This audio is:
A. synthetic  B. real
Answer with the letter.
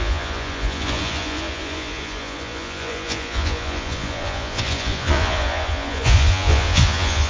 A